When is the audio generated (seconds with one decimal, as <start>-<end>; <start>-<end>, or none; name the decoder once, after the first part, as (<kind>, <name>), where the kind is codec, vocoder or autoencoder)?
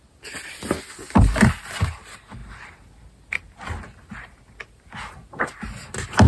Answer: none